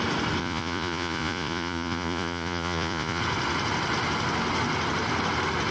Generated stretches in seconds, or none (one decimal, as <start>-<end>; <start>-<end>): 0.4-3.2